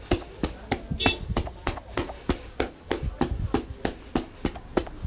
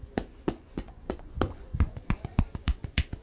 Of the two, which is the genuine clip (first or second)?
first